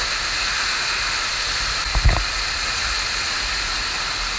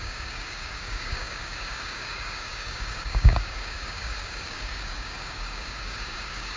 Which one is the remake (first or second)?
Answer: second